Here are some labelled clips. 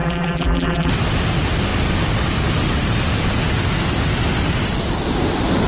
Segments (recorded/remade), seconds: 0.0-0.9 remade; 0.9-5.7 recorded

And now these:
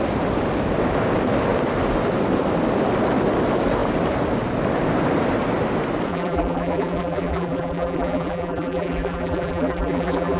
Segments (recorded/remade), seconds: 0.0-6.1 recorded; 6.1-10.4 remade

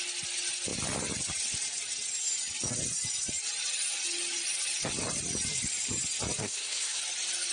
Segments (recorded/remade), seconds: 0.0-6.4 recorded; 6.4-7.0 remade; 7.0-7.5 recorded

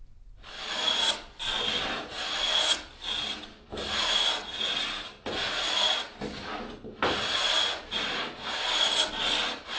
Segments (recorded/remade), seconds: 0.0-9.8 recorded

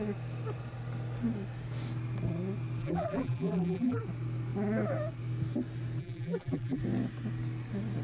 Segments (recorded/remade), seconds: 0.0-2.8 recorded; 2.8-4.0 remade; 4.0-6.0 recorded; 6.0-6.8 remade; 6.8-8.0 recorded

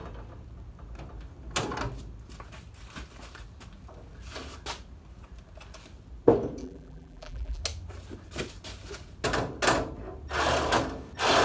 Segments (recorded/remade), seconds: 0.0-6.6 recorded; 6.6-7.6 remade; 7.6-11.4 recorded

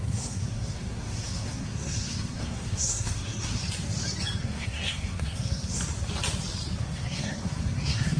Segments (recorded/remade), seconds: 0.0-3.6 remade; 3.6-4.4 recorded; 4.4-5.8 remade; 5.8-6.8 recorded; 6.8-8.2 remade